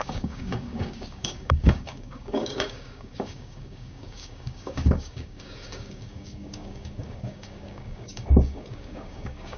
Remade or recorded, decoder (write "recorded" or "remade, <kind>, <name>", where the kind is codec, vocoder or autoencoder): remade, codec, DAC